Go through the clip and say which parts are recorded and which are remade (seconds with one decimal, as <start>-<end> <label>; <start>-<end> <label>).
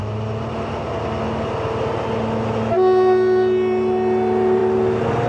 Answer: 0.0-5.3 recorded